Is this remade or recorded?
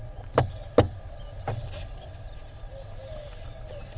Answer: recorded